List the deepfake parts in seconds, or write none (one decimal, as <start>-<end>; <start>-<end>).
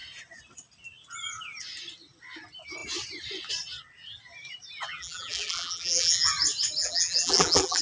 4.9-6.3; 6.8-7.8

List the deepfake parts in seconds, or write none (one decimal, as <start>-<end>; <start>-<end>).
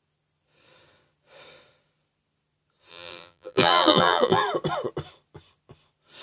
2.9-4.4